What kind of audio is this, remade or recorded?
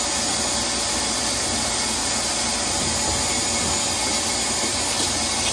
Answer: recorded